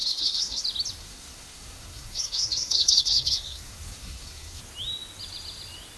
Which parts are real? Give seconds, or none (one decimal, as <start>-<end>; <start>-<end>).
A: 0.6-1.0; 4.6-6.0